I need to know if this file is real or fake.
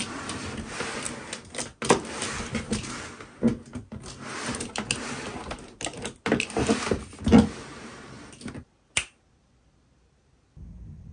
real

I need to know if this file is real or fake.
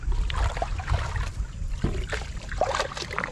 fake